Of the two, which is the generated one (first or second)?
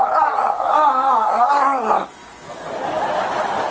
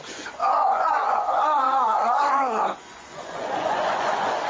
second